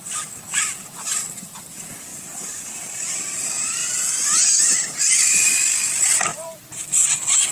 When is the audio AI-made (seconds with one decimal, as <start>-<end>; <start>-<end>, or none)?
2.1-3.2; 3.8-5.5; 6.3-7.1